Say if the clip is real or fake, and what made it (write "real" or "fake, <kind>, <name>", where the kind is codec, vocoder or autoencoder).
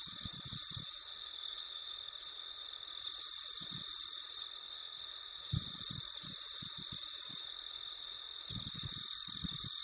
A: real